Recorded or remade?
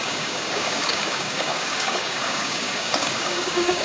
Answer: remade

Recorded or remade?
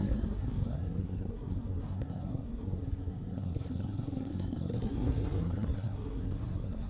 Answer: remade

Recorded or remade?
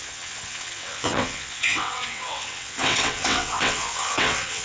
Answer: remade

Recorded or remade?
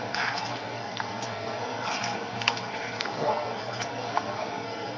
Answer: remade